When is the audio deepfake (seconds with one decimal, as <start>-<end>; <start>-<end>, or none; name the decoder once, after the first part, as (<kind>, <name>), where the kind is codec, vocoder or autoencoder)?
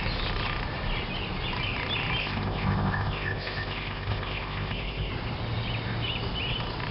2.2-5.1 (codec, ZipCodec)